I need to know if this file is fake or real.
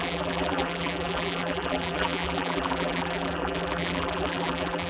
fake